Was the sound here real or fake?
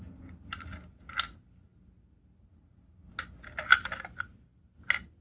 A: real